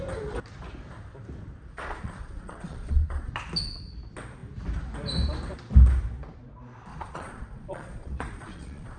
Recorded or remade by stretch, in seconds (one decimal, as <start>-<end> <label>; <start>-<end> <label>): 0.0-1.7 recorded; 1.7-3.3 remade; 3.3-6.9 recorded; 6.9-9.0 remade